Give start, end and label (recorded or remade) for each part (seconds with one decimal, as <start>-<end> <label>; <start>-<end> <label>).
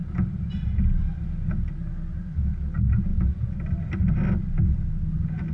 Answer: 0.0-5.5 recorded